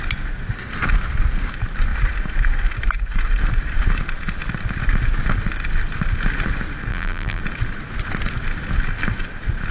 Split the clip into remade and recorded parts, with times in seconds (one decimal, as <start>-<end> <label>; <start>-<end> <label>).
0.0-6.9 recorded; 6.9-7.4 remade; 7.4-9.7 recorded